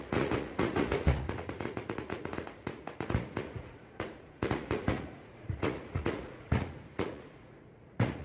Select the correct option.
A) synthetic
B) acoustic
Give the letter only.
A